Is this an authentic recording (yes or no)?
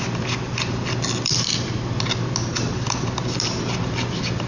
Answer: yes